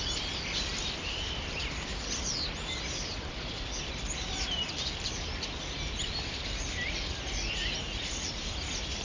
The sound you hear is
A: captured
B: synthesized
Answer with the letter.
B